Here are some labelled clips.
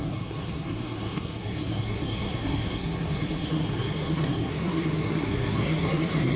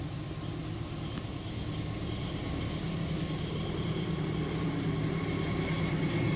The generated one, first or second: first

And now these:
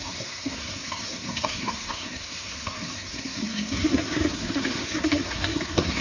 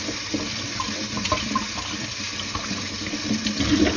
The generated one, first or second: first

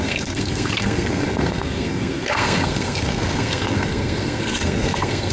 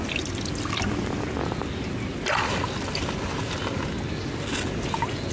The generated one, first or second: first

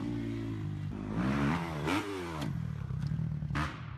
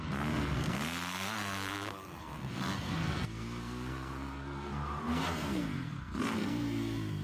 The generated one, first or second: second